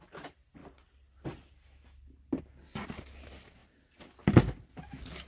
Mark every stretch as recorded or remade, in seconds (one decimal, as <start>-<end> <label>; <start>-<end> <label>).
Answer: 0.0-5.3 recorded